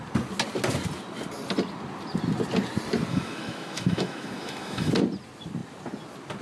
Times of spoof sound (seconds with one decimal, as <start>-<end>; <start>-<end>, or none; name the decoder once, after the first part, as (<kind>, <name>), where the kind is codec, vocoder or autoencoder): 3.1-4.9 (autoencoder, DAC-VAE)